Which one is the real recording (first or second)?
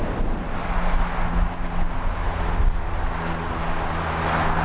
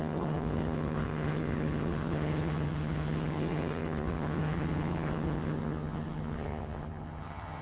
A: first